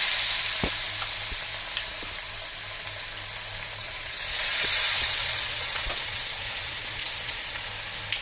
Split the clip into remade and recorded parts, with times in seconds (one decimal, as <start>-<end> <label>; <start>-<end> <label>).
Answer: 0.0-3.8 recorded; 3.8-7.7 remade; 7.7-8.2 recorded